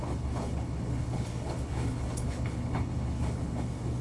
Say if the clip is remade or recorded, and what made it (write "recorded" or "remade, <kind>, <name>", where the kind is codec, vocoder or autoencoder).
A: remade, codec, HILCodec